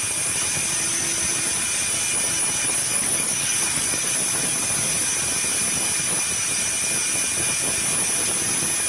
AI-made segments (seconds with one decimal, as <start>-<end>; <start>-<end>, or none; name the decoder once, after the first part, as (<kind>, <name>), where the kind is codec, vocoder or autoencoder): 2.8-4.1 (codec, DAC)